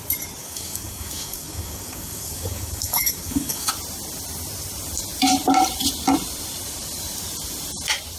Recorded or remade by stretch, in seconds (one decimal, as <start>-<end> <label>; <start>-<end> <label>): 0.0-0.4 recorded; 0.4-3.7 remade; 3.7-8.2 recorded